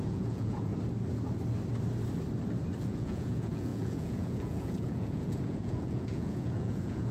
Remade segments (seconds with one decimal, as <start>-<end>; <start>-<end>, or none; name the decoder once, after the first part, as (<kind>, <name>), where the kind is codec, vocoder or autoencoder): 0.0-0.7 (vocoder, Vocos); 2.8-7.1